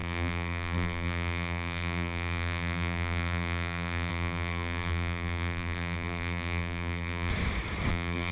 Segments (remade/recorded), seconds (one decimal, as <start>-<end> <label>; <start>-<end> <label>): 0.0-7.3 remade; 7.3-7.9 recorded; 7.9-8.3 remade